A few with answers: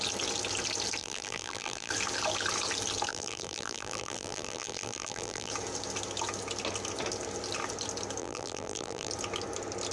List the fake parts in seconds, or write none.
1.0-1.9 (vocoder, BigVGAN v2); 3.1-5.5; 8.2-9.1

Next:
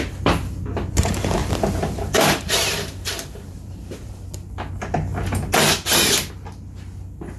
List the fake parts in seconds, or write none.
1.4-4.1 (vocoder, BigVGAN v2)